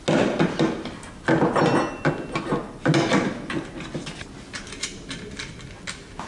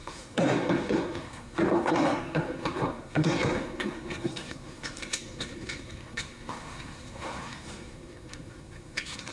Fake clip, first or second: second